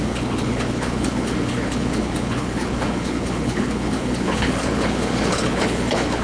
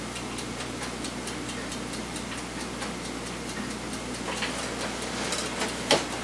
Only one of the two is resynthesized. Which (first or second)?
first